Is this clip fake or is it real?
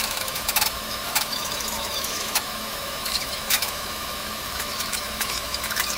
fake